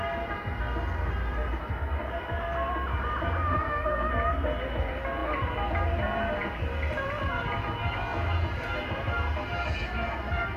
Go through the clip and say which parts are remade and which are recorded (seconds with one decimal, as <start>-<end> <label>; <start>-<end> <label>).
0.0-3.5 recorded; 3.5-4.1 remade; 4.1-10.6 recorded